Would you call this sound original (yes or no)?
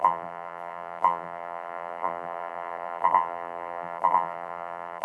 no